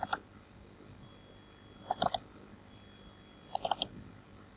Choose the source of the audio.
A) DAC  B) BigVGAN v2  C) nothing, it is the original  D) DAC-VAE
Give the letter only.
C